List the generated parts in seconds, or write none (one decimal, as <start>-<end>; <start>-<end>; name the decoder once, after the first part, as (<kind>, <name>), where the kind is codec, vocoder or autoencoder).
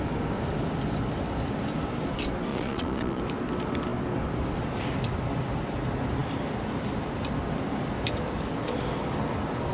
2.5-3.2 (vocoder, Vocos)